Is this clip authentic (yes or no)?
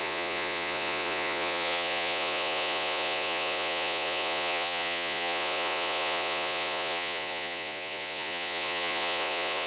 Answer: no